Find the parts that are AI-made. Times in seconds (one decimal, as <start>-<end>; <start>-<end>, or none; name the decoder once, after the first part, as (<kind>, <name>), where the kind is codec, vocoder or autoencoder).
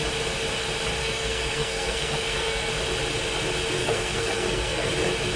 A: 1.0-2.7 (codec, SNAC); 3.8-4.9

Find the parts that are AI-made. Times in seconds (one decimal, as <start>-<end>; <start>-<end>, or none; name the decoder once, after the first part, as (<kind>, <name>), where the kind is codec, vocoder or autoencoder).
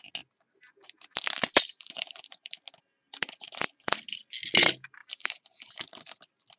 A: 1.7-2.6 (vocoder, BigVGAN v2); 5.0-5.9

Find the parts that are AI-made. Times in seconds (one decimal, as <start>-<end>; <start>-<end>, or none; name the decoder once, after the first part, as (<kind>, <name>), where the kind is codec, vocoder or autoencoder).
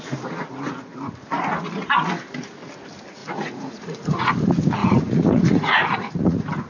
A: 3.2-4.3 (vocoder, Vocos); 4.8-6.7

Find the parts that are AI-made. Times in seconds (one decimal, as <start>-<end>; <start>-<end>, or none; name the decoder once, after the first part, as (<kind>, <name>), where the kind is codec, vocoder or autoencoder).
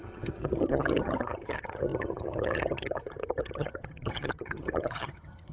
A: 0.0-5.5 (vocoder, HiFi-GAN)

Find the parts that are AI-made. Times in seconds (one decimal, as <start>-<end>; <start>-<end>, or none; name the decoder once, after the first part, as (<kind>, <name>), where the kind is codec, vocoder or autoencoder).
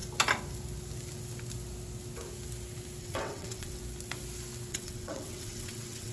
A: 3.0-3.8 (vocoder, WaveNeXt); 4.7-6.1